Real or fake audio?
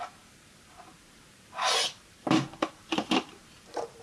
fake